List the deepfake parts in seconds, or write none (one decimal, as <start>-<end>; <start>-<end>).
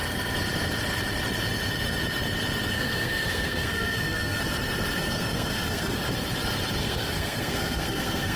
2.7-4.4; 5.0-6.0; 6.8-8.4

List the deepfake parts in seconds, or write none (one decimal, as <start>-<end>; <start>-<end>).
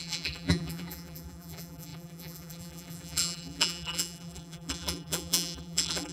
0.0-6.1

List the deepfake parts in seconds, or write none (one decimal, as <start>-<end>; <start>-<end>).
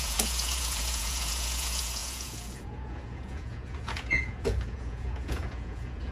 0.0-6.1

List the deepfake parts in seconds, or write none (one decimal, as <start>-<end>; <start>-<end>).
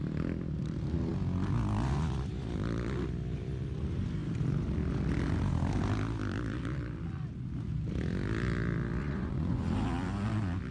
9.0-9.6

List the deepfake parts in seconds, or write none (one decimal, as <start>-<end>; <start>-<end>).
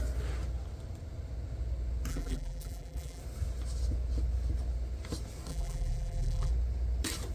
2.1-3.2; 5.5-6.5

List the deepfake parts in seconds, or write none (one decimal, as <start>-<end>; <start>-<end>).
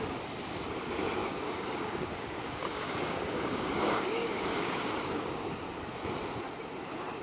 1.2-5.5